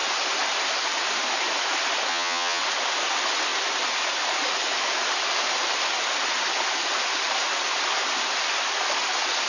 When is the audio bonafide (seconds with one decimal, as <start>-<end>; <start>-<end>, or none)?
0.0-2.1; 2.6-9.5